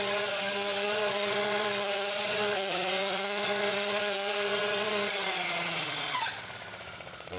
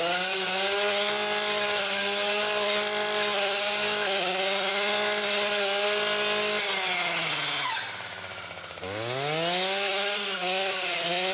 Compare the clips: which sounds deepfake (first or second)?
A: first